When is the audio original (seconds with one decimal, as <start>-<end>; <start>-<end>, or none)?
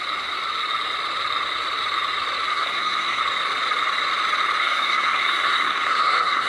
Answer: 0.0-2.5; 3.2-4.6